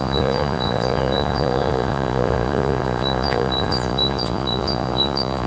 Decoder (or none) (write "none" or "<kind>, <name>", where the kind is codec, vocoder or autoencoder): vocoder, Vocos